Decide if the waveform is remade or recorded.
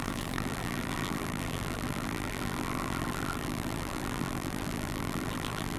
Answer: remade